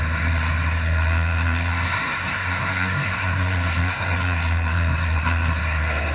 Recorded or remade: remade